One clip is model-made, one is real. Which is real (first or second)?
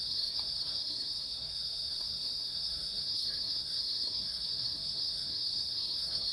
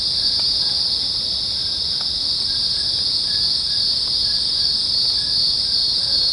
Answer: second